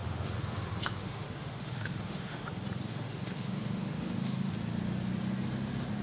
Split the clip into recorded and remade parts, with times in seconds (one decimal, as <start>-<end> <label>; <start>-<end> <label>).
0.0-2.5 remade; 2.5-2.9 recorded; 2.9-4.5 remade; 4.5-6.0 recorded